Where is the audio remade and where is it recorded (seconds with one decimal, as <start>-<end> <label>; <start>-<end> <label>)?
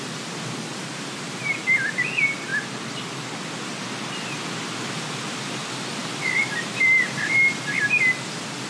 0.0-0.8 recorded; 0.8-1.5 remade; 1.5-6.0 recorded; 6.0-7.3 remade; 7.3-8.7 recorded